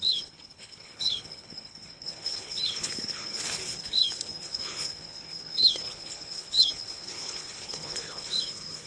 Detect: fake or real fake